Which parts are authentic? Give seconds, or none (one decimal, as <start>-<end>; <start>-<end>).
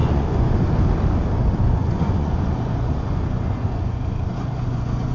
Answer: 0.7-1.8